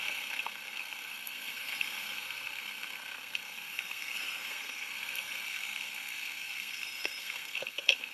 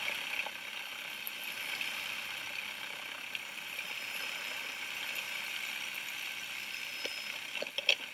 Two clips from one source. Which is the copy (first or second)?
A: first